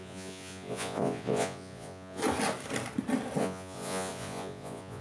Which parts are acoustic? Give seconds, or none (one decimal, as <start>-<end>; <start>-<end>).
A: 2.2-3.4